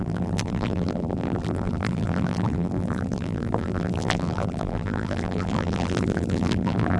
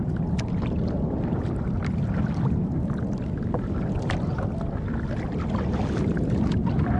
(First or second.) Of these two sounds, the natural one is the second